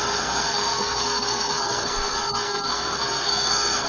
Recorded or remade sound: remade